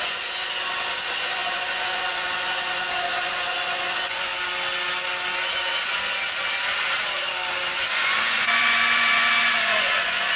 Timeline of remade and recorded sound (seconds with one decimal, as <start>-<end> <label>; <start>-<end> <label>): 0.0-4.3 remade; 4.3-7.8 recorded; 7.8-10.4 remade